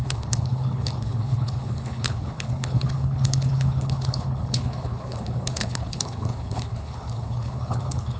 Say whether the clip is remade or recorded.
remade